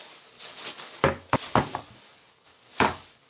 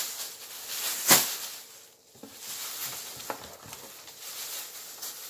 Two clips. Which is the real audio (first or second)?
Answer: second